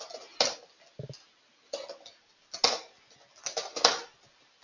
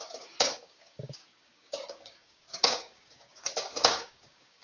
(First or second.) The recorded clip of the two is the first